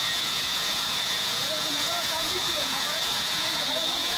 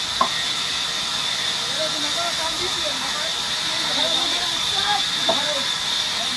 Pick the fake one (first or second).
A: first